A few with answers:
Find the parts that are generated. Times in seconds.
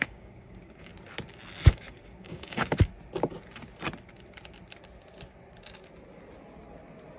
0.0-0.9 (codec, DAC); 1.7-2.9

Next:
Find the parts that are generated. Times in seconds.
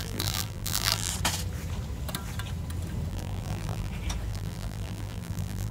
0.0-1.1 (vocoder, BigVGAN v2); 3.1-3.9; 4.3-5.7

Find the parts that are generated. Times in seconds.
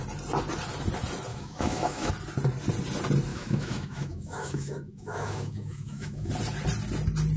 1.3-2.1 (autoencoder, DAC-VAE); 3.3-6.3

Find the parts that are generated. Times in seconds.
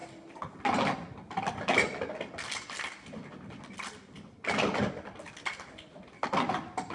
none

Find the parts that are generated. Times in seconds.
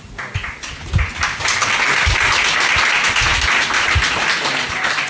none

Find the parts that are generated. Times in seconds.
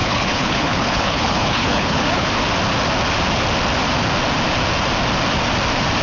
0.0-2.3 (codec, HILCodec)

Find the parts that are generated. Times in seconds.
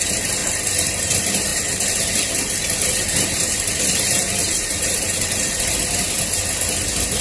1.5-3.5 (vocoder, BigVGAN v2); 4.4-5.3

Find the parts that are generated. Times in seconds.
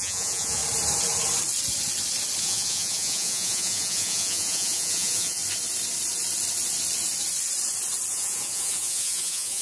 0.0-0.6 (vocoder, Vocos); 2.4-5.4; 8.1-9.6